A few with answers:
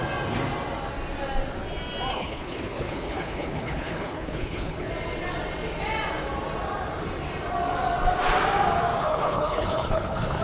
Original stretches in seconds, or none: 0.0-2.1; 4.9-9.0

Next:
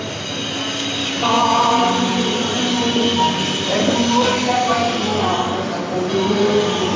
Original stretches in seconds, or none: 0.0-1.0; 1.7-7.0

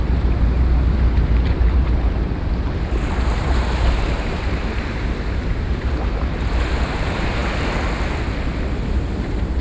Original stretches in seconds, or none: 7.4-9.1

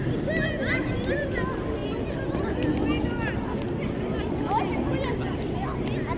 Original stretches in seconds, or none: 0.0-6.2

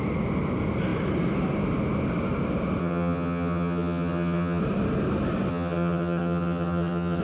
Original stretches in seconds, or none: 0.0-2.8; 4.6-5.5

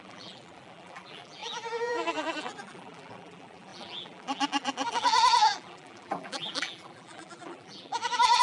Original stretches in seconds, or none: none

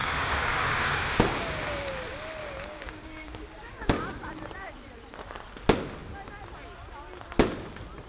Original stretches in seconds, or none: 1.9-2.4; 3.9-8.1

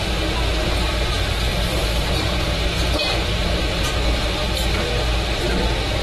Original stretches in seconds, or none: 0.0-1.5; 3.9-6.0